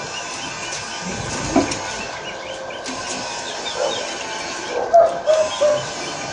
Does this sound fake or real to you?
real